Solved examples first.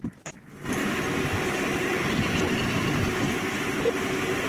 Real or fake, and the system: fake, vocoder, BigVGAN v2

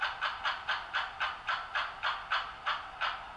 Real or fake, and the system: real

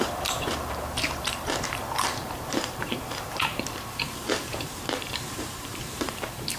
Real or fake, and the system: fake, vocoder, BigVGAN v2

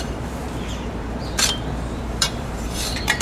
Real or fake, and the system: fake, vocoder, BigVGAN v2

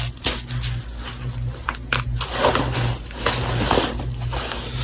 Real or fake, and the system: real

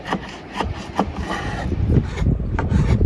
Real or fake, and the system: fake, vocoder, BigVGAN v2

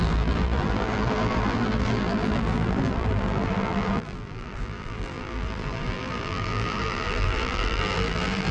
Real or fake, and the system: fake, vocoder, BigVGAN v2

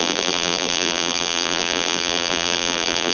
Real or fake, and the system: fake, vocoder, BigVGAN v2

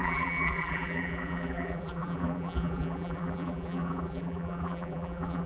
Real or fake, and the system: fake, vocoder, BigVGAN v2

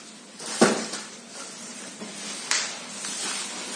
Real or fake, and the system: fake, vocoder, BigVGAN v2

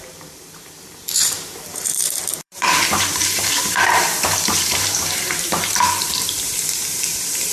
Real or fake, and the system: fake, vocoder, BigVGAN v2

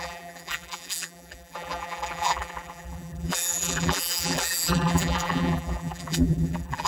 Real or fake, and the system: fake, vocoder, BigVGAN v2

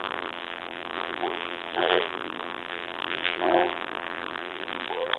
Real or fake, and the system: fake, vocoder, BigVGAN v2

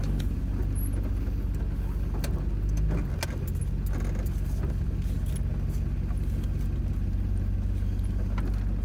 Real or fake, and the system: real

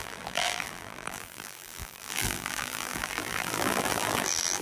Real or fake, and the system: fake, vocoder, BigVGAN v2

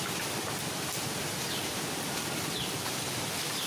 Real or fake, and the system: fake, vocoder, BigVGAN v2